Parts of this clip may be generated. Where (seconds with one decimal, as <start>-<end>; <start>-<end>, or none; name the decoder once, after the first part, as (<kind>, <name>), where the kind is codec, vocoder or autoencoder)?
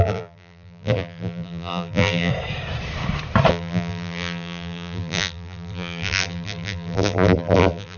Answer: 0.0-2.3 (vocoder, BigVGAN v2); 3.5-8.0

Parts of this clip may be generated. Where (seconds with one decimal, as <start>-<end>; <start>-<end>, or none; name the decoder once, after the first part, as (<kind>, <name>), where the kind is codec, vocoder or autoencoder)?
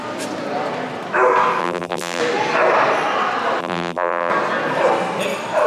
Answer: 1.6-2.2 (vocoder, BigVGAN v2); 3.6-4.3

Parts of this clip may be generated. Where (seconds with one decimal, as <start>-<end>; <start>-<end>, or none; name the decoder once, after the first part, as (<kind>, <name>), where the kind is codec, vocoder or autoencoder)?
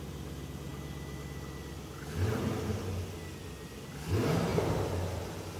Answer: none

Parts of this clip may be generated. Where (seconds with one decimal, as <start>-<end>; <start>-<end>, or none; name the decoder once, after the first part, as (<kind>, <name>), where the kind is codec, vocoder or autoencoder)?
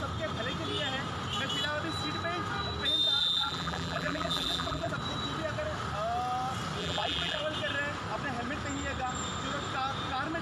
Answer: 3.2-4.9 (vocoder, BigVGAN v2); 6.8-7.4